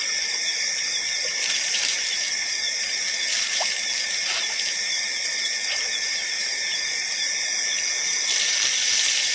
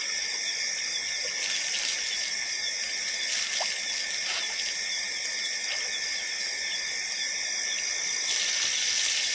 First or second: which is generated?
first